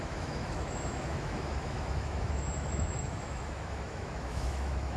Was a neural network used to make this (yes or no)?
yes